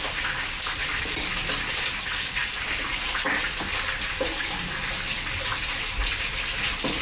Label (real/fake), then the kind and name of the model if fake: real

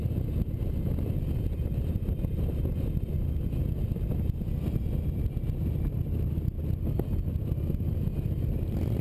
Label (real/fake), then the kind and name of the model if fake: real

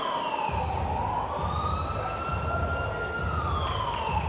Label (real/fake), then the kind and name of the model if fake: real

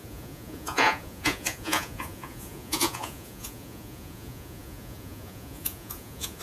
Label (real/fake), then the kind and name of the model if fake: fake, vocoder, Vocos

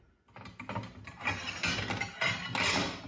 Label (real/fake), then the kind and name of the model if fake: real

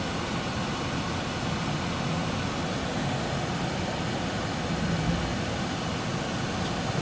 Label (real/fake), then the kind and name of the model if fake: real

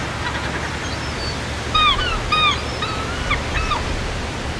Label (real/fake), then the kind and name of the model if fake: real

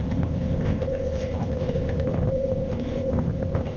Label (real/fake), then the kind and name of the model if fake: fake, codec, ZipCodec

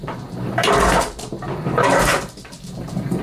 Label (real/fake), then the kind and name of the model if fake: fake, vocoder, BigVGAN v2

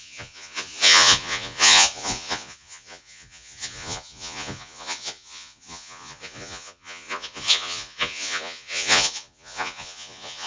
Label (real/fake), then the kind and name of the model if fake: fake, vocoder, Vocos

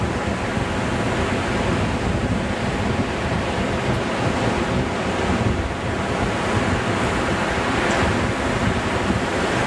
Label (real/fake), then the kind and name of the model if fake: real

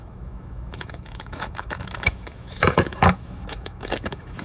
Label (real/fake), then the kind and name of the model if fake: fake, autoencoder, DAC-VAE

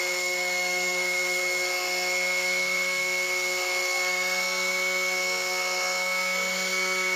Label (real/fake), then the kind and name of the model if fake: fake, codec, SNAC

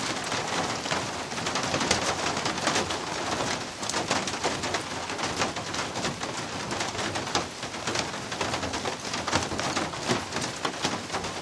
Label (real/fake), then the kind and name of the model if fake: real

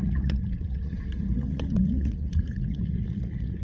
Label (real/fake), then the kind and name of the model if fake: fake, vocoder, Vocos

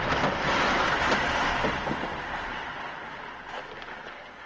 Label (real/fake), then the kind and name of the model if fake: real